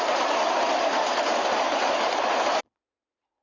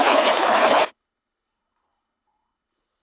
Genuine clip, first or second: first